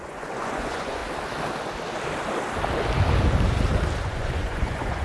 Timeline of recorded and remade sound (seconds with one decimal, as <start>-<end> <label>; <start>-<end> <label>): 0.0-1.0 remade; 1.0-4.0 recorded; 4.0-5.0 remade